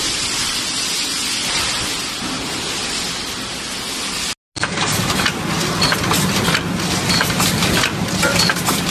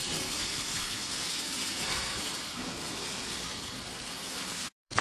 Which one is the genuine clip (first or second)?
first